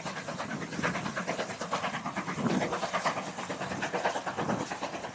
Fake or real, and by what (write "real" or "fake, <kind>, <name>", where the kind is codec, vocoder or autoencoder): real